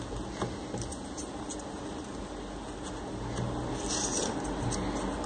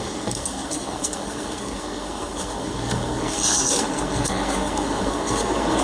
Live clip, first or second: first